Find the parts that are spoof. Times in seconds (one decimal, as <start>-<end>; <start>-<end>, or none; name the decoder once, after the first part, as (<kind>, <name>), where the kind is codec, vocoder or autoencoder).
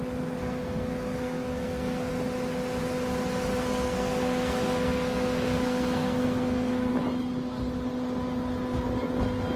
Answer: 0.4-2.1 (codec, SNAC); 3.5-6.9